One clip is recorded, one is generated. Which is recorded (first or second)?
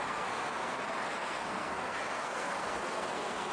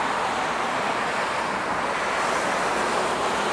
second